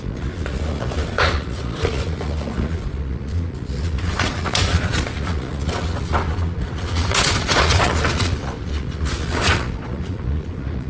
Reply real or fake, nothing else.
fake